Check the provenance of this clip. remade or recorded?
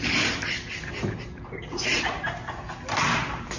recorded